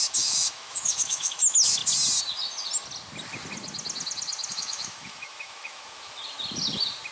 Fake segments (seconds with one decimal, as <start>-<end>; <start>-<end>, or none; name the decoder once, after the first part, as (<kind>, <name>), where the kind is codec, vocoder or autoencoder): 0.0-1.8 (autoencoder, DAC-VAE); 4.5-6.2